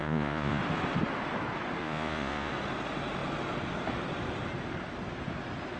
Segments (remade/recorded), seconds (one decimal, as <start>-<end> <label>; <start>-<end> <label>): 0.0-0.6 remade; 0.6-1.8 recorded; 1.8-2.5 remade; 2.5-5.8 recorded